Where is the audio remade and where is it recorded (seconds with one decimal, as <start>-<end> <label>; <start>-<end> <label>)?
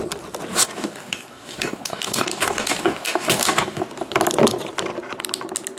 0.0-0.5 recorded; 0.5-3.8 remade; 3.8-5.8 recorded